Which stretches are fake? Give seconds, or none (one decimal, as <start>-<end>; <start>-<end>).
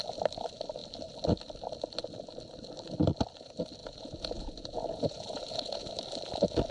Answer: 3.8-5.9